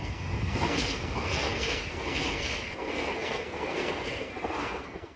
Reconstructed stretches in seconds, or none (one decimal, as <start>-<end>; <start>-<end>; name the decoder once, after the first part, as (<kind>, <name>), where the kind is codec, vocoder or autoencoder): 0.0-5.2 (codec, SNAC)

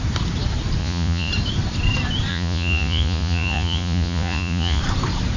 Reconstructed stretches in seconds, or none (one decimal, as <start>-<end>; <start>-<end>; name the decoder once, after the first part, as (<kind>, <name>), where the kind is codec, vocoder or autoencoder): 0.8-1.3 (vocoder, Vocos); 2.3-4.8

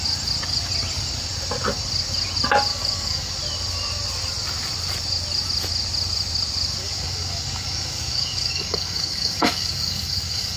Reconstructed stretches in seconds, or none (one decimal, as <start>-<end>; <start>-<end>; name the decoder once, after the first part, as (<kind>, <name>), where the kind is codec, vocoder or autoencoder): 2.7-3.3 (codec, DAC); 6.8-10.6

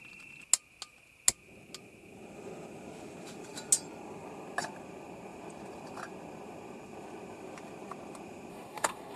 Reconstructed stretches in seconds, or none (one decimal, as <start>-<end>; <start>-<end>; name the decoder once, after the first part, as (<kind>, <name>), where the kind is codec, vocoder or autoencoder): 8.5-9.2 (codec, SNAC)

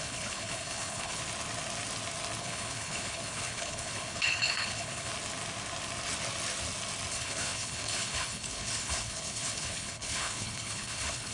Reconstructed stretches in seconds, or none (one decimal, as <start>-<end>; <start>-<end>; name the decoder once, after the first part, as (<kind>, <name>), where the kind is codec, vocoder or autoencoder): 0.0-1.2 (codec, HILCodec); 2.4-5.1; 7.1-11.3

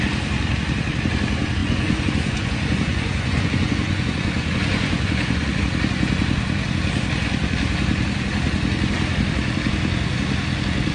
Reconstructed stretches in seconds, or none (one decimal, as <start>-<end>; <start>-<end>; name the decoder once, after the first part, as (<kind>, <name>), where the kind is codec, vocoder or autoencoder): 1.6-5.6 (vocoder, Vocos)

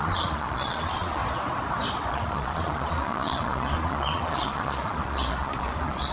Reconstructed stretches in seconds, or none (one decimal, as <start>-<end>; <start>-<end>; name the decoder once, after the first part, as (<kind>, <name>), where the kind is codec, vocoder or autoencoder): 0.0-1.2 (vocoder, Vocos); 2.1-6.1

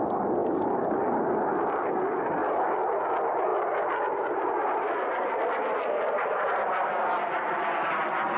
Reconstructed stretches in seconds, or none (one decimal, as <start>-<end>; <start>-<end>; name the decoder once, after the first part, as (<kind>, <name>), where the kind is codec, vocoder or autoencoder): 0.4-1.2 (vocoder, BigVGAN v2); 3.5-6.3